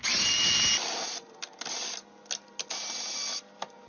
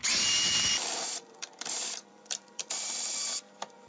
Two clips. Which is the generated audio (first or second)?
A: second